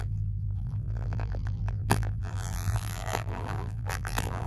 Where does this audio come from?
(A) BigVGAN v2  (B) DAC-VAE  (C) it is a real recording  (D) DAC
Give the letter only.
A